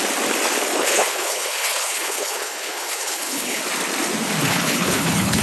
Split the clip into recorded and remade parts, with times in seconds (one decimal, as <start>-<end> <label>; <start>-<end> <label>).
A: 0.0-0.7 recorded; 0.7-3.6 remade; 3.6-4.5 recorded; 4.5-5.4 remade